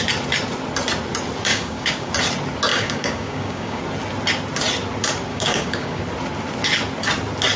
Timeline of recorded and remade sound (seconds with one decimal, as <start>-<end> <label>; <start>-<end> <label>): 0.0-1.5 recorded; 1.5-2.1 remade; 2.1-2.7 recorded; 2.7-3.8 remade; 3.8-5.3 recorded; 5.3-6.0 remade; 6.0-7.6 recorded